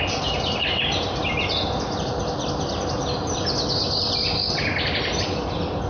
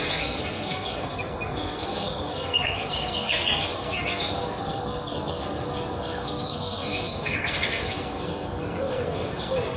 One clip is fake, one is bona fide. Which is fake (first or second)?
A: second